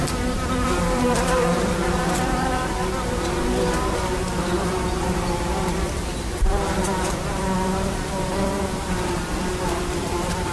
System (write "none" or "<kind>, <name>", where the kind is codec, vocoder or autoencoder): vocoder, BigVGAN v2